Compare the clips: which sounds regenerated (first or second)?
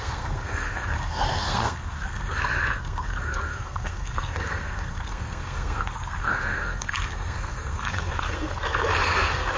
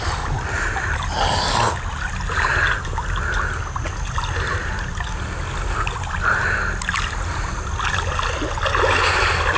first